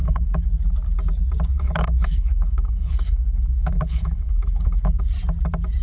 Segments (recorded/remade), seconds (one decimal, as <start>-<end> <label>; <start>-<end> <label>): 0.0-0.5 remade; 0.5-1.5 recorded; 1.5-5.0 remade; 5.0-5.8 recorded